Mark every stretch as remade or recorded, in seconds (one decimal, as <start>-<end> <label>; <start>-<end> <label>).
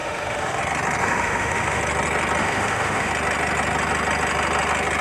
0.0-0.6 remade; 0.6-1.0 recorded; 1.0-1.8 remade; 1.8-2.4 recorded; 2.4-3.1 remade; 3.1-5.0 recorded